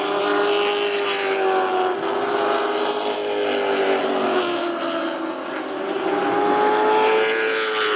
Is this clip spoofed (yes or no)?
no